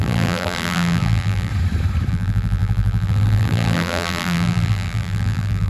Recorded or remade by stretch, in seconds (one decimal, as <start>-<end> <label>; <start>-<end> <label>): 0.0-1.5 remade; 1.5-2.1 recorded; 2.1-5.7 remade